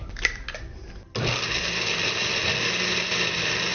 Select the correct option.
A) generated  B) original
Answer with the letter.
B